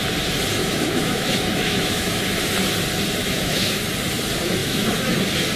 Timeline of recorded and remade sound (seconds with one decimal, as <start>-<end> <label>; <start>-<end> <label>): 0.0-0.6 recorded; 0.6-2.2 remade; 2.2-3.2 recorded; 3.2-3.8 remade; 3.8-4.6 recorded; 4.6-5.1 remade; 5.1-5.6 recorded